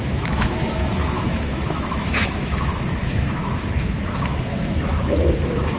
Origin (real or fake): fake